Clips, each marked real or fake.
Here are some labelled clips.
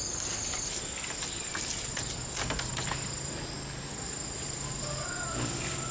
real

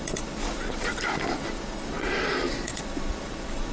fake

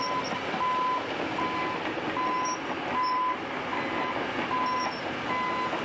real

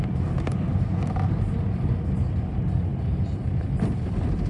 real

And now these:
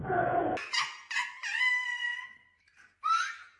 real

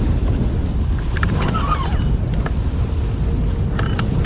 real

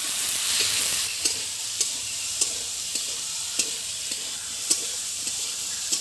fake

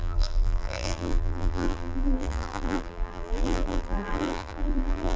fake